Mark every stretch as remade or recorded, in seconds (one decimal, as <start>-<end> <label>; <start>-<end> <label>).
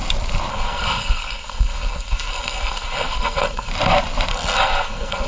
0.0-0.5 recorded; 0.5-3.7 remade; 3.7-4.3 recorded; 4.3-5.3 remade